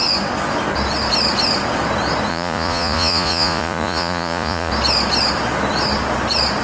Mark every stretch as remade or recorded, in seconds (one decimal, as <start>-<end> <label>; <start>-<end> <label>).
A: 0.0-2.3 recorded; 2.3-4.7 remade; 4.7-6.6 recorded